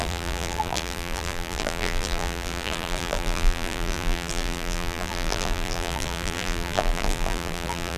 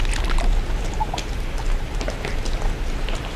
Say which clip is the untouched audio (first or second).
second